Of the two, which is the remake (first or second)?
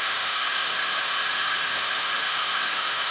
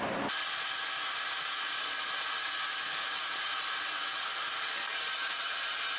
first